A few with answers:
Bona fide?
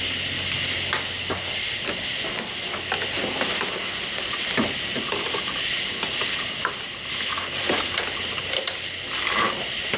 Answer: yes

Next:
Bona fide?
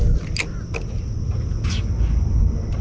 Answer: yes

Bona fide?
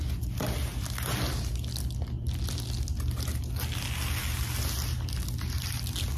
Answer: yes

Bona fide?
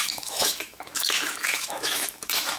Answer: no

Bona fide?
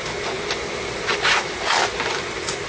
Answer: yes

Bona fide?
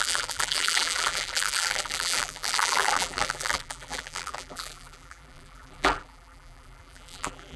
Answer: no